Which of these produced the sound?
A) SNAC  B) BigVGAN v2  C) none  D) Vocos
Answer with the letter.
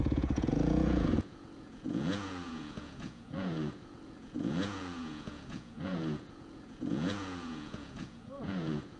D